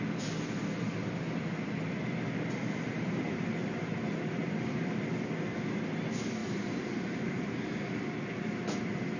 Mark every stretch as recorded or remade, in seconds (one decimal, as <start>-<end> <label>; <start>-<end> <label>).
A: 0.0-6.4 recorded; 6.4-8.0 remade; 8.0-9.2 recorded